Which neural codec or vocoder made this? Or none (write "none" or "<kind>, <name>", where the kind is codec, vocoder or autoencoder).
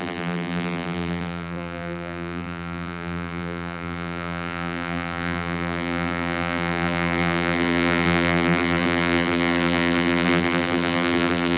vocoder, BigVGAN v2